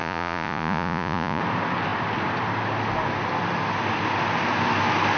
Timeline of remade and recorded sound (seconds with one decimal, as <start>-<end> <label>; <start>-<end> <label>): 0.0-1.4 remade; 1.4-5.2 recorded